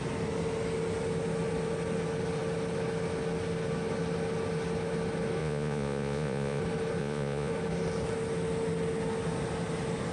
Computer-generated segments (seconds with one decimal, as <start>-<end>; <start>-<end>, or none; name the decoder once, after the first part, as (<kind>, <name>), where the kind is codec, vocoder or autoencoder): 5.4-6.6 (vocoder, Vocos); 7.0-7.5